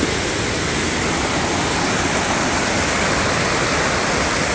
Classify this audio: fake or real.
real